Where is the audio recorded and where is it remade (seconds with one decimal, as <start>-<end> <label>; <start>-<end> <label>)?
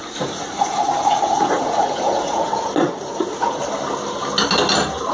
0.0-2.5 remade; 2.5-3.1 recorded; 3.1-3.6 remade; 3.6-5.1 recorded